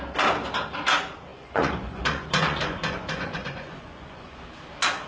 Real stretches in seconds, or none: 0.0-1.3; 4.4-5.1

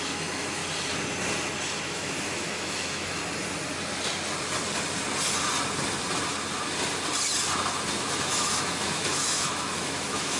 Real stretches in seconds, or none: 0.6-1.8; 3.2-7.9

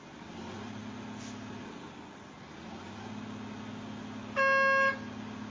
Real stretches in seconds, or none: 0.0-5.5

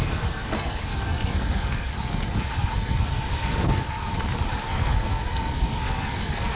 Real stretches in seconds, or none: 1.9-2.4; 4.1-4.6